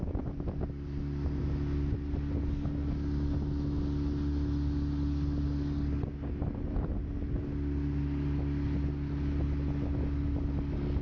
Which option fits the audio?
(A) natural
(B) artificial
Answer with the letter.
A